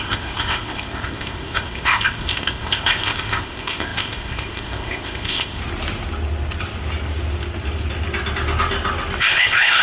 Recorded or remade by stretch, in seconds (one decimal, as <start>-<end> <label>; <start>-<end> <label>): 0.0-5.6 remade; 5.6-9.2 recorded; 9.2-9.8 remade